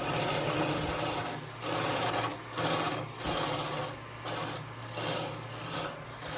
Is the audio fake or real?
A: real